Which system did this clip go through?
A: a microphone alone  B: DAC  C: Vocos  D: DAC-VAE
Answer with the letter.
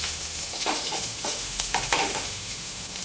D